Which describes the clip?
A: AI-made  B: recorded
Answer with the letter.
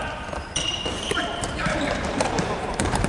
A